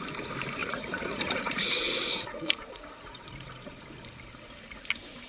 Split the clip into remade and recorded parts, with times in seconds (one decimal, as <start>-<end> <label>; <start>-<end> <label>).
0.0-0.6 recorded; 0.6-3.8 remade; 3.8-5.3 recorded